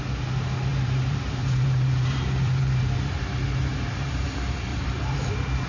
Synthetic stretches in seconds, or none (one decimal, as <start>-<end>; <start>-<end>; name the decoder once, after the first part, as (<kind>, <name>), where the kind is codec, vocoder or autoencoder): 0.7-4.1 (vocoder, BigVGAN v2); 4.7-5.3